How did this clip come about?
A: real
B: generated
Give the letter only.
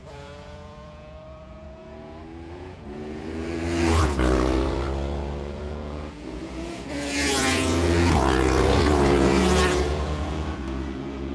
B